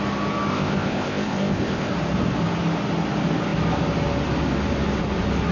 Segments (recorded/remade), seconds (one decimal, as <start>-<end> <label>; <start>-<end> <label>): 0.0-0.5 recorded; 0.5-1.9 remade; 1.9-5.5 recorded